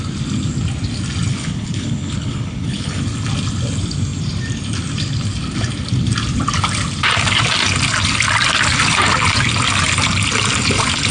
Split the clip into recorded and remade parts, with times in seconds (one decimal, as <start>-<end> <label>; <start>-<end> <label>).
0.0-1.3 recorded; 1.3-3.0 remade; 3.0-11.1 recorded